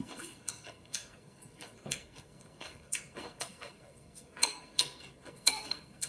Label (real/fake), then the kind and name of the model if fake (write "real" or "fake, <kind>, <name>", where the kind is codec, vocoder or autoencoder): fake, codec, SNAC